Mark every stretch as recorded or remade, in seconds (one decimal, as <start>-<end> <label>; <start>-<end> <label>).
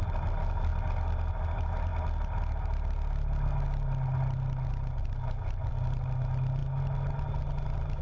0.0-8.0 recorded